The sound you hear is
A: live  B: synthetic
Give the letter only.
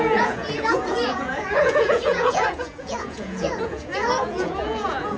B